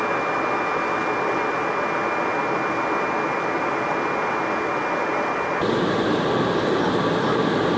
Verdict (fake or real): real